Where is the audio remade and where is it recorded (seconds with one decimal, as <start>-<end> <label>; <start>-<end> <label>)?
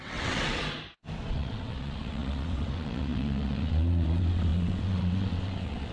0.0-0.6 remade; 0.6-1.3 recorded; 1.3-5.9 remade